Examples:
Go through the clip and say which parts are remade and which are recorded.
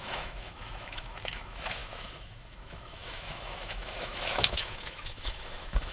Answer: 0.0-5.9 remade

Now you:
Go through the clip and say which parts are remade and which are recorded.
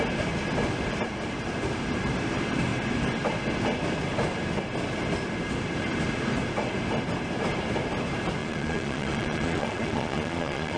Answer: 0.0-8.4 recorded; 8.4-10.8 remade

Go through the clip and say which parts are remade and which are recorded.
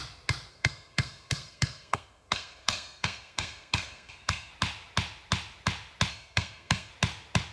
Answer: 0.0-0.5 recorded; 0.5-4.5 remade; 4.5-6.1 recorded; 6.1-6.9 remade; 6.9-7.5 recorded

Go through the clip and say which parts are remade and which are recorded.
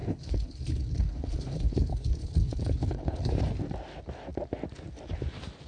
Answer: 0.0-3.4 remade; 3.4-5.7 recorded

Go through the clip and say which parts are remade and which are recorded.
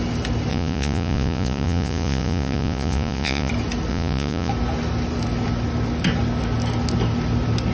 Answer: 0.0-0.5 recorded; 0.5-3.5 remade; 3.5-3.9 recorded; 3.9-4.5 remade; 4.5-7.7 recorded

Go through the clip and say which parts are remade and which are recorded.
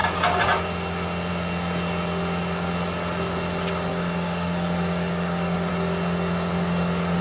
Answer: 0.0-3.9 recorded; 3.9-5.7 remade; 5.7-7.2 recorded